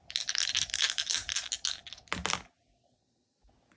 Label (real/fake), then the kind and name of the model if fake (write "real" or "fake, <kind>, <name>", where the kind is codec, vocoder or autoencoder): real